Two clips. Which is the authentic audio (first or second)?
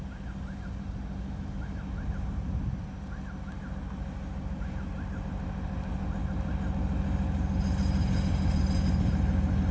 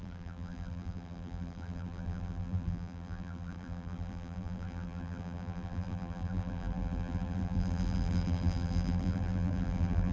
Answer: first